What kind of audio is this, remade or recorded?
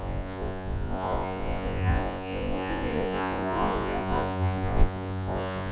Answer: remade